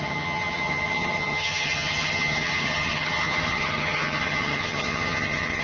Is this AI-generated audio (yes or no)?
yes